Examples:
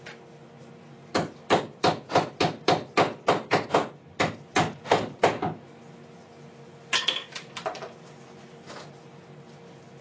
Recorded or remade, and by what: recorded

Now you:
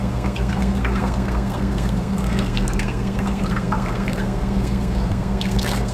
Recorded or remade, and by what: remade, codec, SNAC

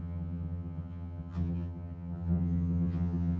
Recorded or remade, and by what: remade, vocoder, HiFi-GAN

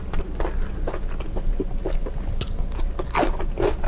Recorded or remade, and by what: recorded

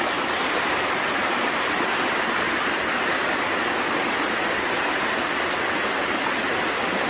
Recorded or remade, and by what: recorded